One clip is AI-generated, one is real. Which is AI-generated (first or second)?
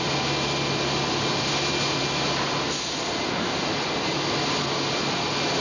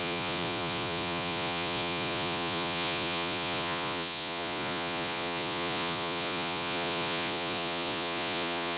second